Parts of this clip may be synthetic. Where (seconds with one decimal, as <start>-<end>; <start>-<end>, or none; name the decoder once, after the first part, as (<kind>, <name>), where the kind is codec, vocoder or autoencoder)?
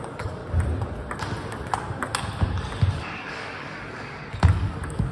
0.0-0.4 (codec, DAC); 2.9-5.1